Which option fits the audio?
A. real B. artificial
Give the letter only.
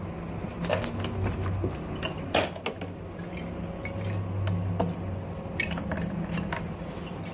A